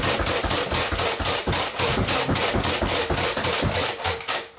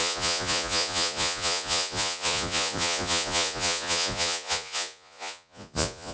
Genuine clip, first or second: first